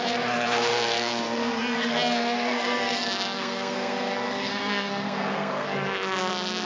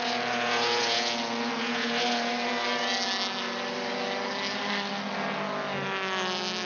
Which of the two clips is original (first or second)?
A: second